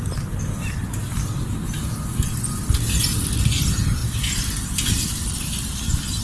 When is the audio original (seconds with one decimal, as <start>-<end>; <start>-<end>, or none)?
0.0-6.2

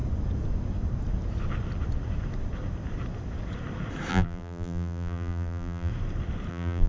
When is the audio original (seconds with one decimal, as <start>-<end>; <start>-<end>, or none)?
0.0-4.1; 5.9-6.5

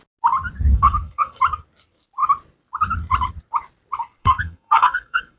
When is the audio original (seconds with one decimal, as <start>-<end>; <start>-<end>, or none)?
0.0-0.7; 1.4-4.2

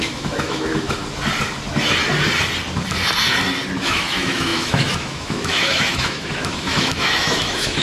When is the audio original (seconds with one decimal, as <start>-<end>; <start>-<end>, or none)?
1.0-3.8